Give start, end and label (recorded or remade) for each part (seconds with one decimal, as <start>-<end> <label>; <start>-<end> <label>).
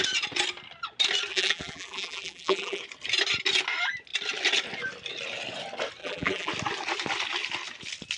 0.0-1.3 recorded; 1.3-2.8 remade; 2.8-6.0 recorded; 6.0-6.5 remade; 6.5-8.2 recorded